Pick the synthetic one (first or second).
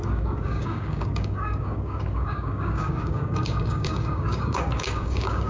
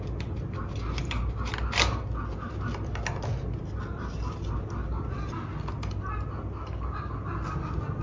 first